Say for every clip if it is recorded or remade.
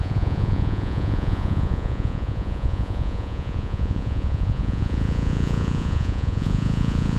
remade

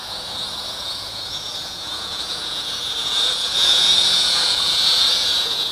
remade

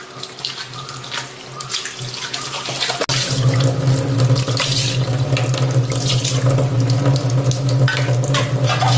recorded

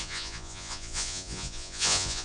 remade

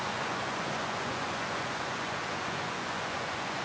remade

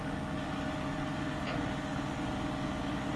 recorded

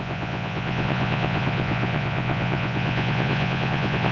remade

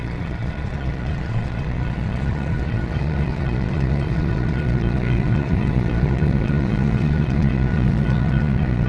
remade